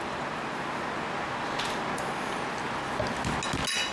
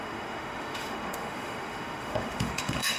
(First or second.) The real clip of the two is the first